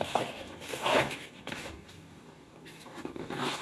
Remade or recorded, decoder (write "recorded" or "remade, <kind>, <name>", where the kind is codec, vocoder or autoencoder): remade, codec, DAC